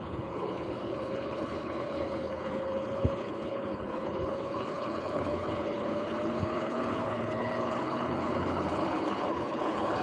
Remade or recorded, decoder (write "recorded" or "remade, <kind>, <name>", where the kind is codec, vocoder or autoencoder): remade, codec, HILCodec